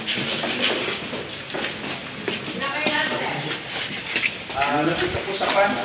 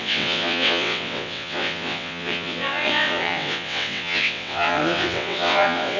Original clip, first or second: first